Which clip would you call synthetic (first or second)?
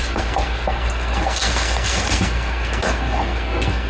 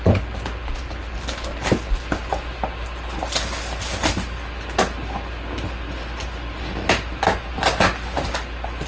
first